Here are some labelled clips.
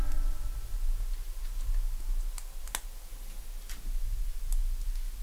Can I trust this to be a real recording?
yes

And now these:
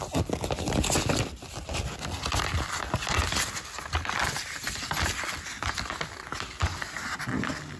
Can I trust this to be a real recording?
yes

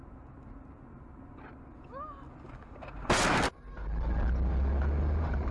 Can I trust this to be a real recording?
yes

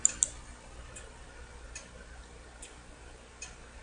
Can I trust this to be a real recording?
yes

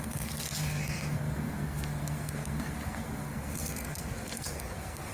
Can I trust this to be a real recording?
no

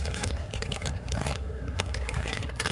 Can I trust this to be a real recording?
no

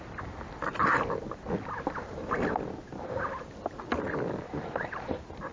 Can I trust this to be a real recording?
yes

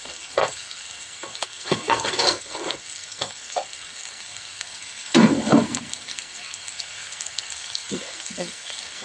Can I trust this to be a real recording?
no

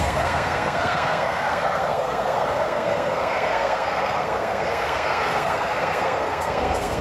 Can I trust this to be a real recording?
no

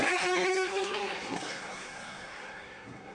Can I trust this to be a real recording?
no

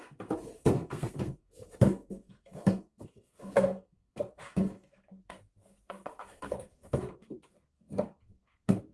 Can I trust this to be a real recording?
no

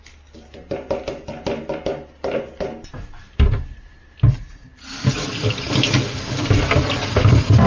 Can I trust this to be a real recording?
yes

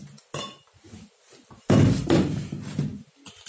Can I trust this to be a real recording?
yes